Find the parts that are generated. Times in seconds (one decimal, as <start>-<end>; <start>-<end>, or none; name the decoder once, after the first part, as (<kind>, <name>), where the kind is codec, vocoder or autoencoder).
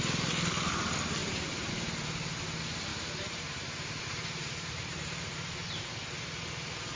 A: 1.2-1.7 (vocoder, BigVGAN v2); 2.9-5.9